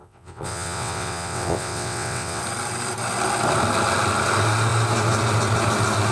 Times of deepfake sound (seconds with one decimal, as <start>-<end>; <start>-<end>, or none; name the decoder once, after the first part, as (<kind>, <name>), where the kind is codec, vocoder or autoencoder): 0.0-2.4 (vocoder, WaveNeXt)